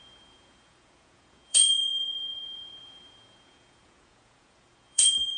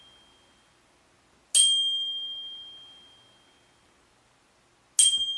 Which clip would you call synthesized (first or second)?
first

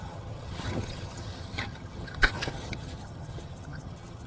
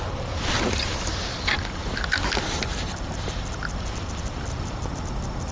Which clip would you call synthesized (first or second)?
first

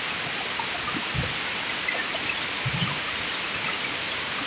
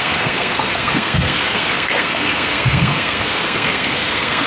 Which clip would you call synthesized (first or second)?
second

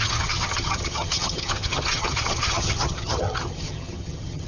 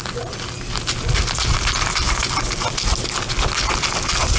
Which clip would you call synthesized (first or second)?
first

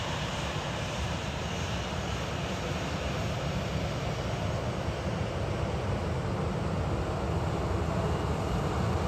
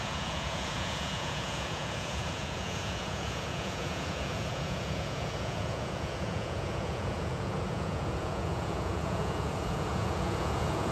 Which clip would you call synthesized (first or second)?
second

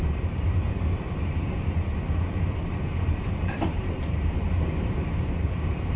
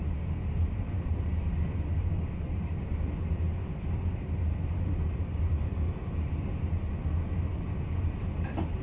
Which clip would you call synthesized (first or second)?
first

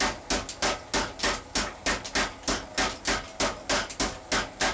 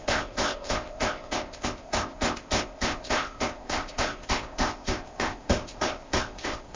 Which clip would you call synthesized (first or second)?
second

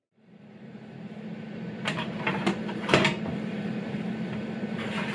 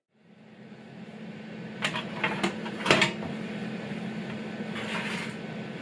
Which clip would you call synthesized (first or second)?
first